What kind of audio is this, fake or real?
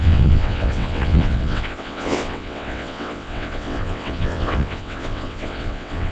fake